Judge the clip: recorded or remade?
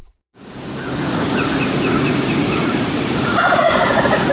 remade